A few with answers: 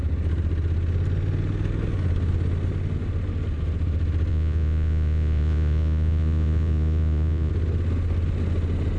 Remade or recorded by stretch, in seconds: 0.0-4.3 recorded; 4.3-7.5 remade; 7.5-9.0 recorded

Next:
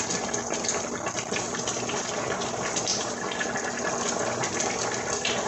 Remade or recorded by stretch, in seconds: 0.0-5.5 recorded

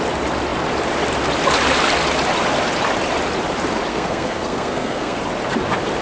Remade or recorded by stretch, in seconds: 0.0-3.9 recorded; 3.9-5.2 remade; 5.2-6.0 recorded

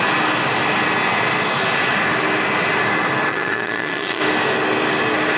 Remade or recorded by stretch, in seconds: 0.0-3.3 recorded; 3.3-4.2 remade; 4.2-5.4 recorded

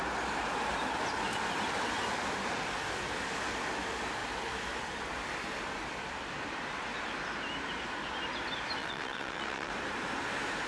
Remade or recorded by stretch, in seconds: 0.0-8.8 recorded; 8.8-9.7 remade; 9.7-10.7 recorded

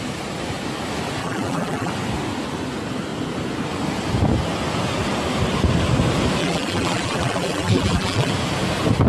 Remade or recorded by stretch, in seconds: 0.0-1.2 recorded; 1.2-1.9 remade; 1.9-6.4 recorded; 6.4-8.3 remade; 8.3-9.1 recorded

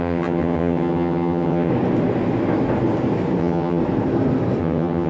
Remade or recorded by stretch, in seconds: 0.0-1.7 remade; 1.7-3.4 recorded; 3.4-3.8 remade; 3.8-4.6 recorded; 4.6-5.1 remade